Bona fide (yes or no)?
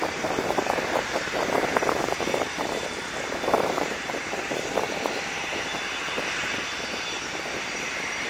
no